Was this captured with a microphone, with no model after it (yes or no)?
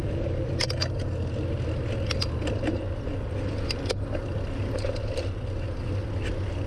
yes